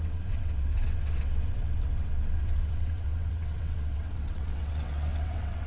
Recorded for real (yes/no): no